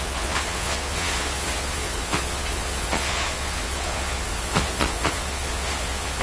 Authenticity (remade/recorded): remade